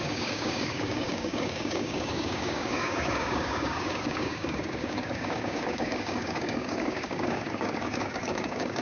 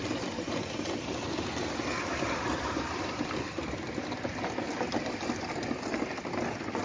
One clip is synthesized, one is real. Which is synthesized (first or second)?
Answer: first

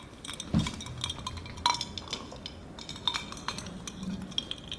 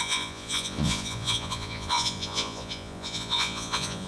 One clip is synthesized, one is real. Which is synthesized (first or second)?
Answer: second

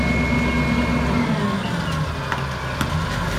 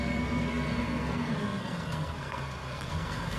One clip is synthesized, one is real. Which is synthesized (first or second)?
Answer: second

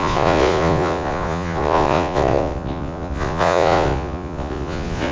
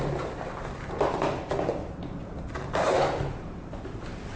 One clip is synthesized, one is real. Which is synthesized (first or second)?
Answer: first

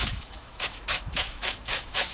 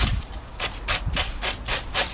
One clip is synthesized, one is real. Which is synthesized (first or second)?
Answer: first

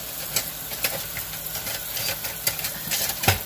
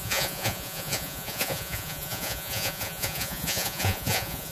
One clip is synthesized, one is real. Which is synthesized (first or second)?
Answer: second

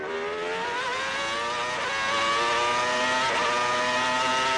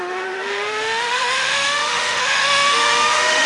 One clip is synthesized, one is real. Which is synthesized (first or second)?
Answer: second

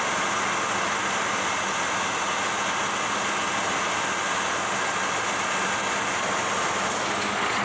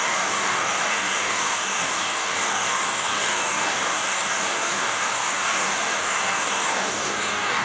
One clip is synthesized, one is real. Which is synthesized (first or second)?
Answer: second